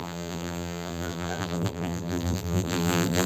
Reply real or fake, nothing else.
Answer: fake